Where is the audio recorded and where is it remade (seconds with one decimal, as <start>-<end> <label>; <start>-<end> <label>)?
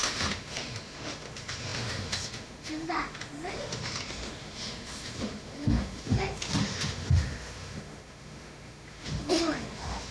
0.0-10.1 remade